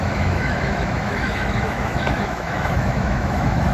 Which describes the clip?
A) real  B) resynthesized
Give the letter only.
B